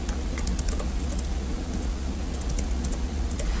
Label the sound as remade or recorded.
remade